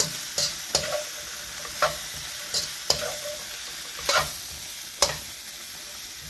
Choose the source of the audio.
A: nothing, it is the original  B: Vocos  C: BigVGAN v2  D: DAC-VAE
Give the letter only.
C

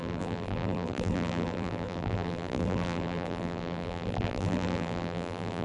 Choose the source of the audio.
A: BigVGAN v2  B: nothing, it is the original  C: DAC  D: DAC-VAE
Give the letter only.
A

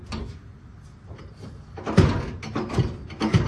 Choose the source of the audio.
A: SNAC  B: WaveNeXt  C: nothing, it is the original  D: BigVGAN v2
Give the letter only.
C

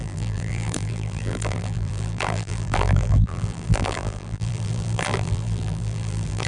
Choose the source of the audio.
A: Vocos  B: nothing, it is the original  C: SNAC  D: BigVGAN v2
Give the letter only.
D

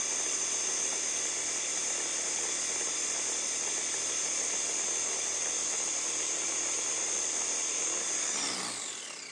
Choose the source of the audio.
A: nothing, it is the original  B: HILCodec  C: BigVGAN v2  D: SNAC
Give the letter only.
C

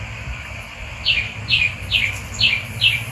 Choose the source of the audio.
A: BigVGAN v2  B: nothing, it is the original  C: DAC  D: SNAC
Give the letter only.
A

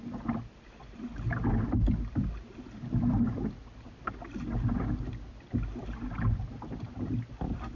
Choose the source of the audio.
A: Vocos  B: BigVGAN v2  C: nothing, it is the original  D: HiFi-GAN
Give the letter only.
C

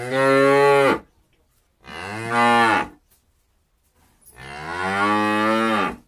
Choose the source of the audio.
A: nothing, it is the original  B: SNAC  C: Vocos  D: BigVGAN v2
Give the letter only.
A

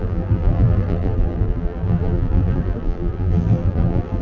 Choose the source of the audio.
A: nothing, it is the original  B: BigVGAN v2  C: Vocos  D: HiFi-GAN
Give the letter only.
B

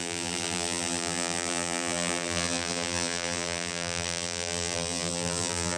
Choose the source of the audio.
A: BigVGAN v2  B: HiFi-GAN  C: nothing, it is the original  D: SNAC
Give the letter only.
A